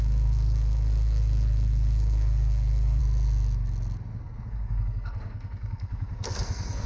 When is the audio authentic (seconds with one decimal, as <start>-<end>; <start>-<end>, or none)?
3.0-4.2